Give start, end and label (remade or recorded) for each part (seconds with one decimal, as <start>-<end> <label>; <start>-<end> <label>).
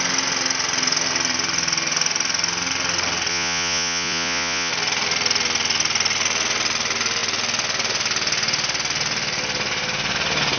0.0-3.3 recorded; 3.3-4.7 remade; 4.7-10.6 recorded